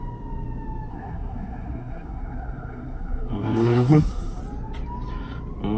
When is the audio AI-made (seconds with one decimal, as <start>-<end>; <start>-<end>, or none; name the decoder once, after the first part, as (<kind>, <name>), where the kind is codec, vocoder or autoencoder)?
0.9-4.4 (codec, SNAC)